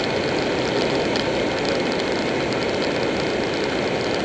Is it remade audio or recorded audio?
recorded